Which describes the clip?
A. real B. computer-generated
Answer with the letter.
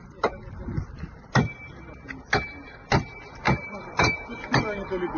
A